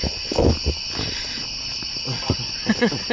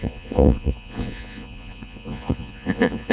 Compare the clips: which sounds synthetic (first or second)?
second